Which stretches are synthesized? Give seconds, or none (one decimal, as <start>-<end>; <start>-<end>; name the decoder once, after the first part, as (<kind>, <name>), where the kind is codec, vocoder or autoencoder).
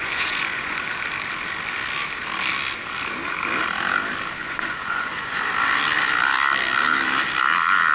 0.0-0.8 (vocoder, Vocos); 4.4-5.5